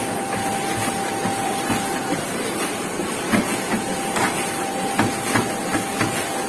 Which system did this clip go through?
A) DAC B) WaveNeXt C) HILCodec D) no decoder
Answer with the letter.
D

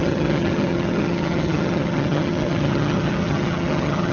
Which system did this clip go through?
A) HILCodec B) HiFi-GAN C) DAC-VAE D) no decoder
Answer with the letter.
B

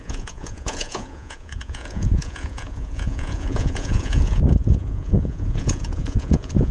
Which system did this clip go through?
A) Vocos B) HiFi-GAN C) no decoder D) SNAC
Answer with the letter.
A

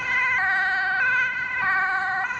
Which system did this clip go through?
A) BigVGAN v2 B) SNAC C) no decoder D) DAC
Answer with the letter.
C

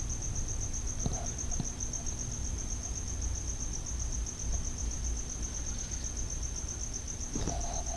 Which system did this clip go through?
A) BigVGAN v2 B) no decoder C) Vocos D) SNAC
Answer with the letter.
B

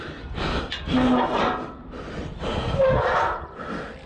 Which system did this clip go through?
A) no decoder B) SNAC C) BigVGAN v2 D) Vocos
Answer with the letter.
A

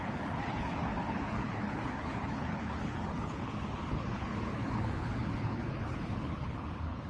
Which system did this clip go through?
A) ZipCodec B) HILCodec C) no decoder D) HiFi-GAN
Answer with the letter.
B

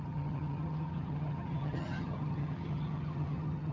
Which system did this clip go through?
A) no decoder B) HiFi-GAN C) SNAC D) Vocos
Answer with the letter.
B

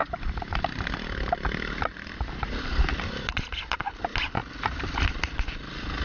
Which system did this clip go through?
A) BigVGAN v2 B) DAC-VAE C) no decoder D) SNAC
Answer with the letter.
A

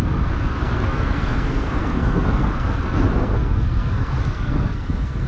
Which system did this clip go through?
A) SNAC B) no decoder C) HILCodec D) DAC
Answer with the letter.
A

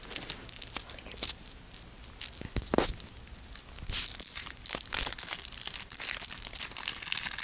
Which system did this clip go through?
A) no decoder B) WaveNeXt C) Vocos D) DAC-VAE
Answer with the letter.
A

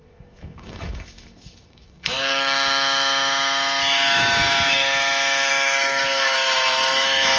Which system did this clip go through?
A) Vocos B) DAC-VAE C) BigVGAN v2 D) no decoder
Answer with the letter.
B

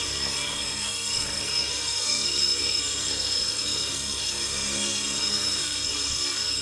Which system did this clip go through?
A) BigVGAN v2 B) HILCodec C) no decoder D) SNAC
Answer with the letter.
D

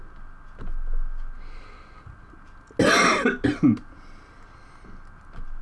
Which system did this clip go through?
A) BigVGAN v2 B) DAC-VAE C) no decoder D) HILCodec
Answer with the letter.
C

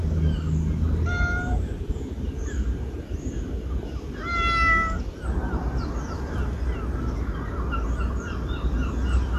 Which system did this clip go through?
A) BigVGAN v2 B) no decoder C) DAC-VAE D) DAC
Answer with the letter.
B